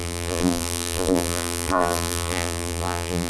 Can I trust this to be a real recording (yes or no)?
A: no